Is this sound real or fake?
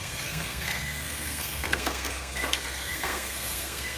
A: fake